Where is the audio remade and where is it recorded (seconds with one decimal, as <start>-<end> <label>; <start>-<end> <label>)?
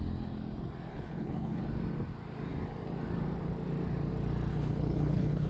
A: 0.0-0.9 recorded; 0.9-1.6 remade; 1.6-4.5 recorded; 4.5-5.5 remade